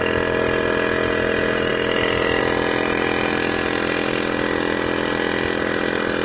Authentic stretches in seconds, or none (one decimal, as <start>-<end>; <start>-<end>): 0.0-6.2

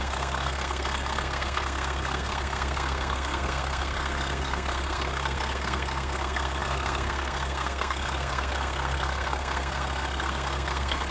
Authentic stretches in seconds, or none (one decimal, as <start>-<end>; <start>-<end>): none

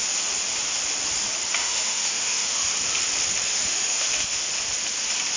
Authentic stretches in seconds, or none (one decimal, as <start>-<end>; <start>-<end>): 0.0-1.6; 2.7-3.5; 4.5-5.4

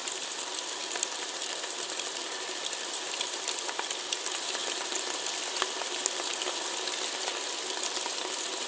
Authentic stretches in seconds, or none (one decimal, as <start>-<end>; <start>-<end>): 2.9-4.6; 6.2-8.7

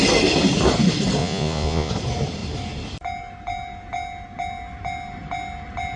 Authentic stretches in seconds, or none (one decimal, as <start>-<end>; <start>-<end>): 0.0-1.2; 1.9-6.0

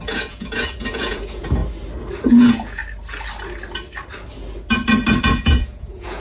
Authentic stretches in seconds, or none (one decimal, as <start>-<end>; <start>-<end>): 1.6-2.3; 2.8-5.2